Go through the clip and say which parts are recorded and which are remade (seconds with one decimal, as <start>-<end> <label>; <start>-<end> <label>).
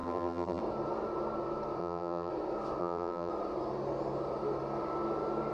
0.0-0.6 remade; 0.6-1.8 recorded; 1.8-2.3 remade; 2.3-2.8 recorded; 2.8-3.3 remade; 3.3-5.5 recorded